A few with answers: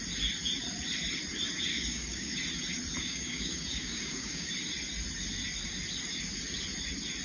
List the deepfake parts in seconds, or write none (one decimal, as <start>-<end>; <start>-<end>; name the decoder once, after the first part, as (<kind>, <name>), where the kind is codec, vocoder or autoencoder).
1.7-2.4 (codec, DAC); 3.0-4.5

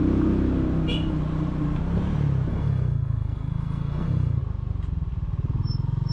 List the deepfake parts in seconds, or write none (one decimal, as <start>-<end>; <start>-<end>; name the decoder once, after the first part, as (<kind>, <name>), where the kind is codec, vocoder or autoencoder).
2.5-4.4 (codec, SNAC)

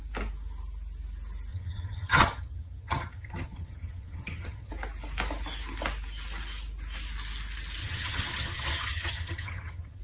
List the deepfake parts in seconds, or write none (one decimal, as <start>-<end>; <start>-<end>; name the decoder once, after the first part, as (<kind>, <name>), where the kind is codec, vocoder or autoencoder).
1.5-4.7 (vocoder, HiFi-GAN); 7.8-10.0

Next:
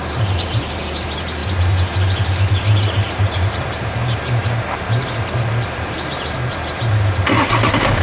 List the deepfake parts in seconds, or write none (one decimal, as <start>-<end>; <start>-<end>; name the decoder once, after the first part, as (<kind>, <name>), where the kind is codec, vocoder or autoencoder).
0.0-1.4 (vocoder, BigVGAN v2); 2.8-8.0